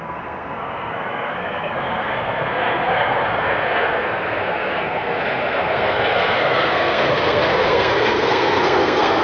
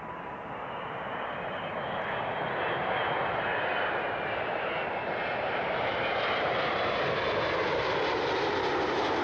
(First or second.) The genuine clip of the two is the second